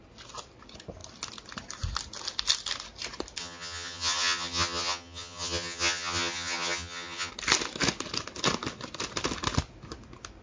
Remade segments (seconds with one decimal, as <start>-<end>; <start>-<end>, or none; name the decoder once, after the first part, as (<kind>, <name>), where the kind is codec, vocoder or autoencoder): 3.4-7.3 (vocoder, HiFi-GAN)